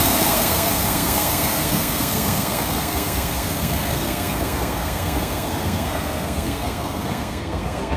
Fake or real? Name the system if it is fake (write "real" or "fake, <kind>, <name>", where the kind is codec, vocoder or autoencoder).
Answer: fake, codec, SNAC